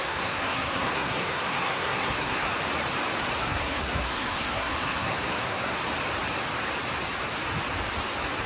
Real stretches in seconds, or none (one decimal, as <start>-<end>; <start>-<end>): 2.5-3.4; 5.8-8.5